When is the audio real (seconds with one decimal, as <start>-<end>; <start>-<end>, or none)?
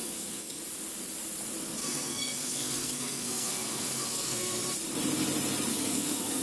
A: 0.6-1.8; 4.6-5.7